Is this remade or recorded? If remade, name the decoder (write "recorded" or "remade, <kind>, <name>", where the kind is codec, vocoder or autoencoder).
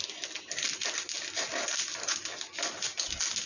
recorded